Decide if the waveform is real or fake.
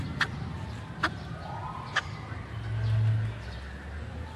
real